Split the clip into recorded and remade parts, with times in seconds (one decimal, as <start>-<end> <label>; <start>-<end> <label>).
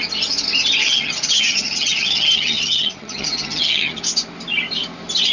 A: 0.0-0.8 recorded; 0.8-4.0 remade; 4.0-5.3 recorded